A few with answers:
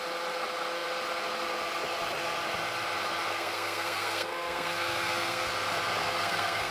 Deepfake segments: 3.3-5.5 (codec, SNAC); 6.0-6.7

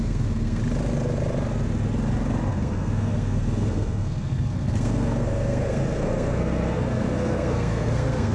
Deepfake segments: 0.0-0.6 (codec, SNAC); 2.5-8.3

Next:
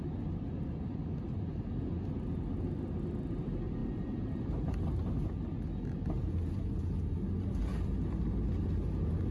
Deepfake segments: none